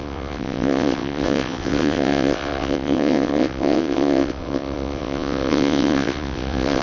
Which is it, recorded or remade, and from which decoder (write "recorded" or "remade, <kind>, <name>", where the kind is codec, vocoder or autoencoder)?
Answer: remade, vocoder, WaveNeXt